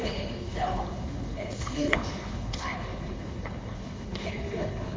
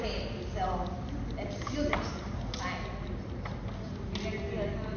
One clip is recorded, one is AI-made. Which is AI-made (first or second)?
first